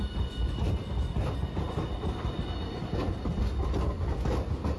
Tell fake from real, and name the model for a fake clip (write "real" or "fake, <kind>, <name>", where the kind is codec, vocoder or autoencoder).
real